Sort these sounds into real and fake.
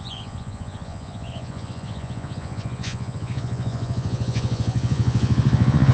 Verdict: fake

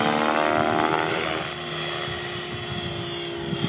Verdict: real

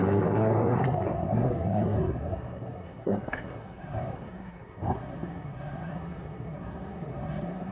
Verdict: fake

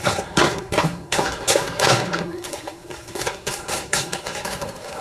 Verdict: fake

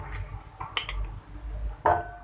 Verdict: real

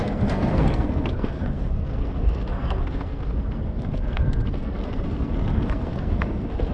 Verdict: fake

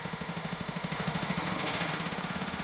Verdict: fake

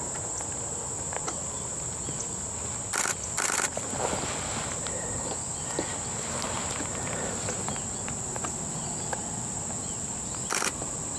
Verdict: real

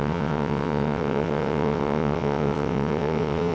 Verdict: fake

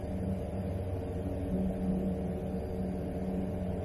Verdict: real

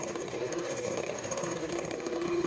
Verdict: fake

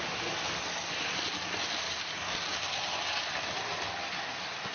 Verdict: real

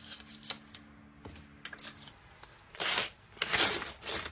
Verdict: real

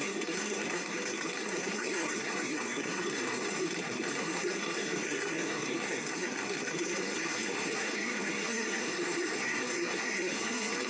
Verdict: fake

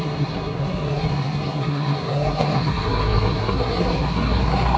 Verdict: fake